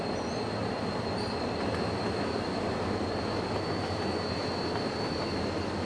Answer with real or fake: real